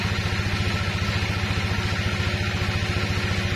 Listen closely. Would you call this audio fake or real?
real